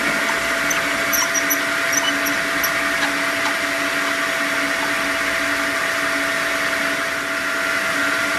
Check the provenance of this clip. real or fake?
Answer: fake